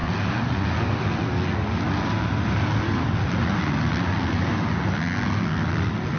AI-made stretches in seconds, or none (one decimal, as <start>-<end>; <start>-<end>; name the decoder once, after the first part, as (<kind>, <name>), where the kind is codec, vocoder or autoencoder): none